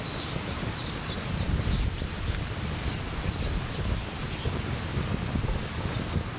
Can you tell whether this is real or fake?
real